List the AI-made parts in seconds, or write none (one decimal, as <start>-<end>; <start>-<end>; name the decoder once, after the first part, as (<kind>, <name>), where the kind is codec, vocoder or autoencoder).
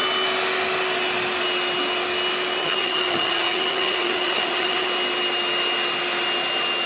2.6-4.9 (vocoder, HiFi-GAN)